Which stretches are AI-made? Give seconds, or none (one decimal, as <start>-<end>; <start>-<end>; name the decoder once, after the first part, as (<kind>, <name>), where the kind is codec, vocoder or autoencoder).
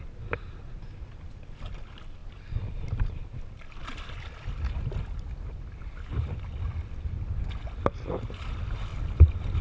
none